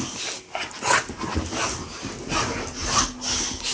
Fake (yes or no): no